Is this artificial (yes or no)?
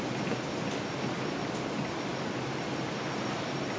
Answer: no